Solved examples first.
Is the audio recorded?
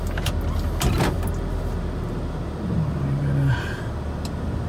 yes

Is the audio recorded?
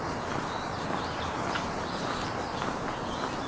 yes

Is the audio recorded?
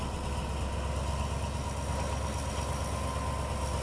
yes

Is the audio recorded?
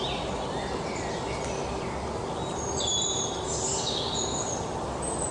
yes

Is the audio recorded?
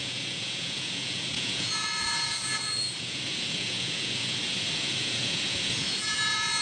no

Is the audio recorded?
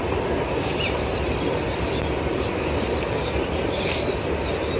yes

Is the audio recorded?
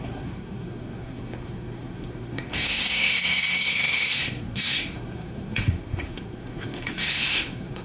no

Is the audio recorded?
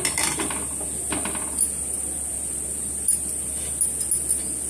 yes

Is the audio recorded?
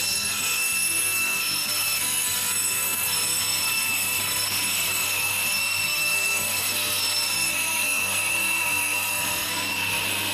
no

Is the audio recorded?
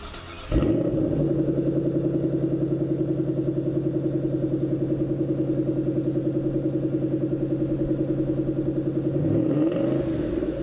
yes